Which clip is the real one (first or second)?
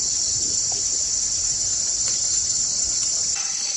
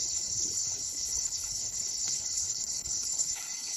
first